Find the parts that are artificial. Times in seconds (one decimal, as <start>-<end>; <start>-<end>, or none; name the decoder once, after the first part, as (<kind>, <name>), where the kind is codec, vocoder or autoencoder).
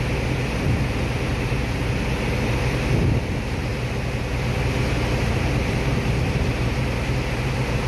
none